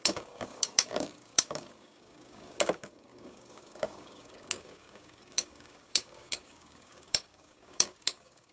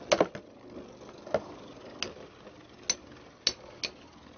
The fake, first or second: first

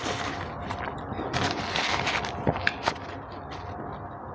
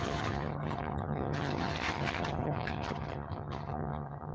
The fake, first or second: second